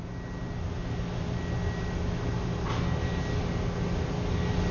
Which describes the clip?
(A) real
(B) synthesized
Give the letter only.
A